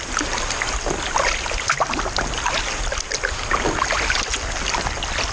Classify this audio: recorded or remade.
recorded